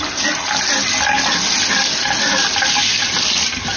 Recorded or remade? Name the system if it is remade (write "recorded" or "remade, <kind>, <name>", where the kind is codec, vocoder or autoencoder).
recorded